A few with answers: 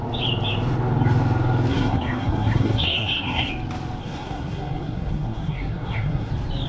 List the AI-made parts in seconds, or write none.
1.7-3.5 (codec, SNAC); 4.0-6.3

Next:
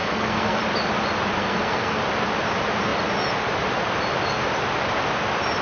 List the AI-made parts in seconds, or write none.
0.0-0.6 (codec, SNAC); 1.4-2.0

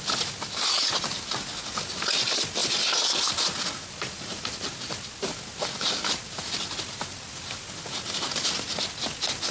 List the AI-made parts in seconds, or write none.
none

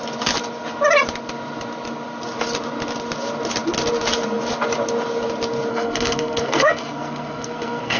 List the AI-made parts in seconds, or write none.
5.7-8.0 (codec, SNAC)

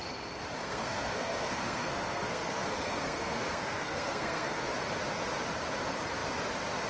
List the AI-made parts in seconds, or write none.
0.6-4.7 (codec, SNAC)

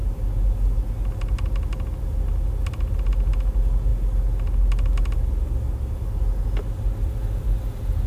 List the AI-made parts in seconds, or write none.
none

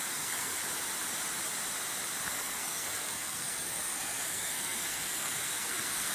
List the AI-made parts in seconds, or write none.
0.0-0.6 (codec, SNAC); 2.3-6.1